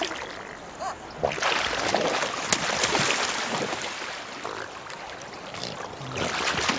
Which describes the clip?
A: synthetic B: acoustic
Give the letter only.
B